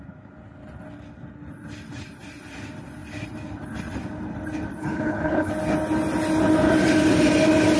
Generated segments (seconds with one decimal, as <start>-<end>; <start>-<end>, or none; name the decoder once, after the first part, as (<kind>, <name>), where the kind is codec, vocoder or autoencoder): 4.8-5.5 (codec, HILCodec)